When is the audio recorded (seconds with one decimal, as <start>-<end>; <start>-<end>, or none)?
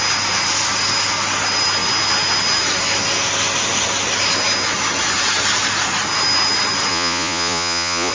0.0-6.9